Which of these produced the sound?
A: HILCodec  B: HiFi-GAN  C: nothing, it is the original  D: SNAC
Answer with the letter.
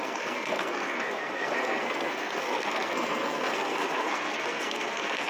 D